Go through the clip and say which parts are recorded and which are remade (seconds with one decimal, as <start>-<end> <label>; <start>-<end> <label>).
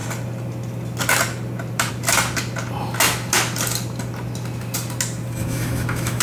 0.0-5.4 recorded; 5.4-6.2 remade